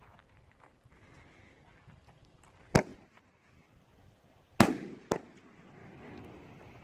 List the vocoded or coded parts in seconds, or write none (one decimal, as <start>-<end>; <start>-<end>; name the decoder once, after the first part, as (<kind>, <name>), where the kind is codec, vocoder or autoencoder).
2.9-5.1 (vocoder, BigVGAN v2); 5.8-6.8